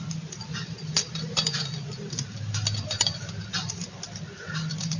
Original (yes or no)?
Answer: yes